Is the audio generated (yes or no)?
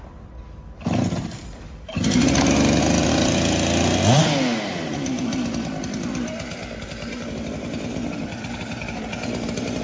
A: no